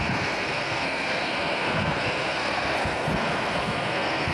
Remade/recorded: remade